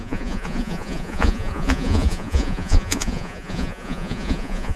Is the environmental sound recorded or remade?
remade